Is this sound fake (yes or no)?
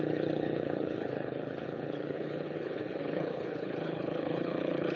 yes